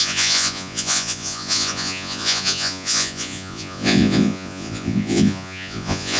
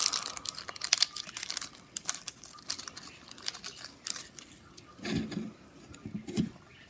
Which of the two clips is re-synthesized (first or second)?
first